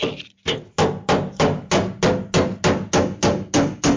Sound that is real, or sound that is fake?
real